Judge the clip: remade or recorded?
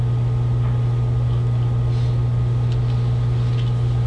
recorded